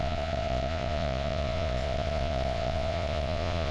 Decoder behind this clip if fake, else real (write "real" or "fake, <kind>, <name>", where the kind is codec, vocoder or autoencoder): fake, vocoder, Vocos